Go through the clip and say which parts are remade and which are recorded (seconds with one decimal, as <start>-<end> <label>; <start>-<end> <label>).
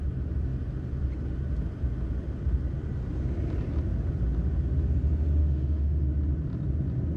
0.0-5.4 recorded; 5.4-6.1 remade; 6.1-7.2 recorded